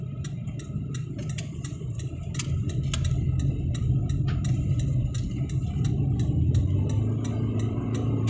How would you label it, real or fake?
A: real